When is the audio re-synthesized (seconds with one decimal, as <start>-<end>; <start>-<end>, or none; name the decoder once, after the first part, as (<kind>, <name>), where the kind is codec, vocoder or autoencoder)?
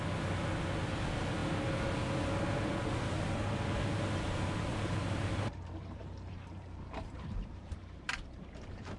4.7-8.4 (vocoder, BigVGAN v2)